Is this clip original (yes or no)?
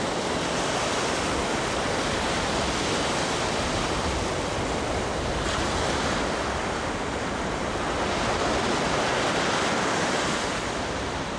yes